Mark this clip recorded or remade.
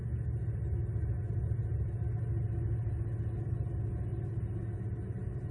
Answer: recorded